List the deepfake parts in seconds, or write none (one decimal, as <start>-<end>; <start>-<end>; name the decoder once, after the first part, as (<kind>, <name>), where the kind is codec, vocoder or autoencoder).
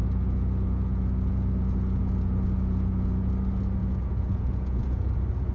0.0-3.3 (vocoder, Vocos); 3.8-5.1